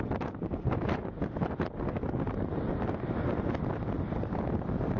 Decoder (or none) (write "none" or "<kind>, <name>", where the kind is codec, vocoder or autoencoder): none